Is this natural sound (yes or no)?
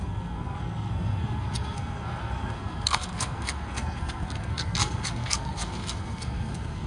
no